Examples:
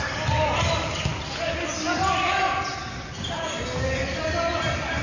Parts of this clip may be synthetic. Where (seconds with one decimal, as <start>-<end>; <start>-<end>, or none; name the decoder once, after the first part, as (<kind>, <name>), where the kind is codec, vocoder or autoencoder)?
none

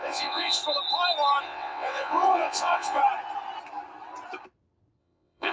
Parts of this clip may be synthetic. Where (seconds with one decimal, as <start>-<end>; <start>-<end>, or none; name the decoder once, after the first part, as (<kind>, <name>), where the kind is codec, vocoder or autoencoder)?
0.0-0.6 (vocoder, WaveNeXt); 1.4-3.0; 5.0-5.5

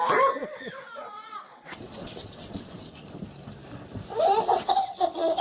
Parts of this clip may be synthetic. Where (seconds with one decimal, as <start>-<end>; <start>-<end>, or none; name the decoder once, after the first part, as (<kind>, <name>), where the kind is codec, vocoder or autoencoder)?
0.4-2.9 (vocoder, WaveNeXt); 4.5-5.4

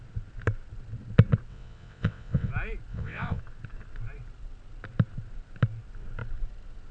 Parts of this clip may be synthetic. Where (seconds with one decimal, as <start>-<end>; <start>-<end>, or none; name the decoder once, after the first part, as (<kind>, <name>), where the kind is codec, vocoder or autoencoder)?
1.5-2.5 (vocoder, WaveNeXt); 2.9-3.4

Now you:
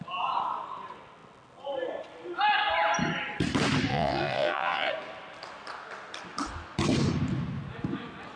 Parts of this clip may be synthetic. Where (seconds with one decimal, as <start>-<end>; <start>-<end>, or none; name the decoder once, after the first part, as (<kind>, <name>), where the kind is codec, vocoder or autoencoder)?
3.9-4.9 (vocoder, WaveNeXt)